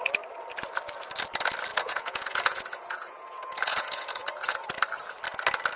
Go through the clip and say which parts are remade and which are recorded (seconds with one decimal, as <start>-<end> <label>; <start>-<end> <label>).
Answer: 0.0-1.7 recorded; 1.7-4.6 remade; 4.6-5.8 recorded